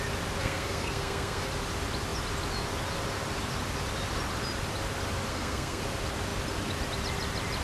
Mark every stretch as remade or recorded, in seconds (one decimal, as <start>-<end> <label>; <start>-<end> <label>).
0.0-0.4 recorded; 0.4-1.5 remade; 1.5-5.3 recorded; 5.3-5.8 remade; 5.8-7.6 recorded